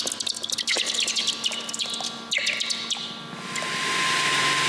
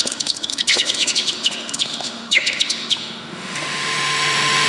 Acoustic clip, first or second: first